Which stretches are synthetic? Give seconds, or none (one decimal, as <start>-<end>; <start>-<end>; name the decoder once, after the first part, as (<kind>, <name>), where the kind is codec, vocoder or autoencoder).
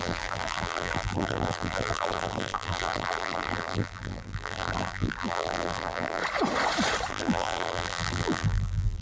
0.0-6.2 (vocoder, BigVGAN v2); 7.1-9.0